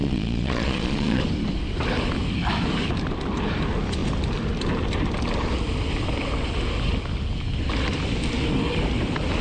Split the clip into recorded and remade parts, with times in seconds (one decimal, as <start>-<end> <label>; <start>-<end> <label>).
0.0-1.2 remade; 1.2-9.4 recorded